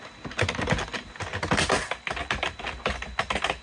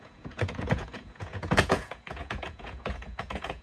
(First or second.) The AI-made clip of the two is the second